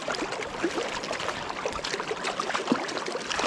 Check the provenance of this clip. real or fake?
real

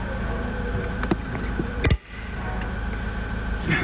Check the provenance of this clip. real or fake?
real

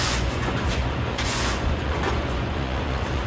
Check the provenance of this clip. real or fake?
fake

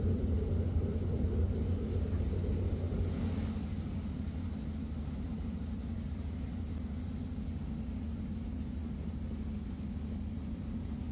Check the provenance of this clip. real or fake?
real